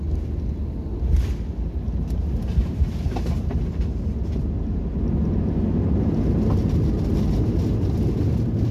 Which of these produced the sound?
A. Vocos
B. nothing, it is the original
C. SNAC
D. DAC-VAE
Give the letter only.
B